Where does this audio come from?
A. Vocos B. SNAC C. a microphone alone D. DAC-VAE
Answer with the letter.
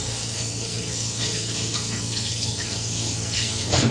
B